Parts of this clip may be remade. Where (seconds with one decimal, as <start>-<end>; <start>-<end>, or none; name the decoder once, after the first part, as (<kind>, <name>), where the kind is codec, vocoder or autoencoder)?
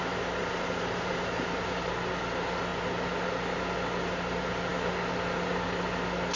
0.4-1.9 (vocoder, BigVGAN v2)